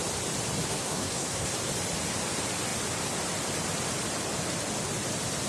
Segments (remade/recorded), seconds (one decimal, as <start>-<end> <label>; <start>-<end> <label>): 0.0-0.6 recorded; 0.6-1.5 remade; 1.5-5.5 recorded